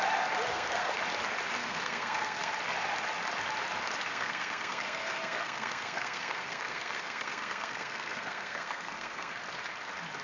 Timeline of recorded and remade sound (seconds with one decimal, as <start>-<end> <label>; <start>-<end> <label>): 0.0-0.5 recorded; 0.5-1.0 remade; 1.0-1.6 recorded; 1.6-2.5 remade; 2.5-4.1 recorded; 4.1-9.4 remade; 9.4-10.2 recorded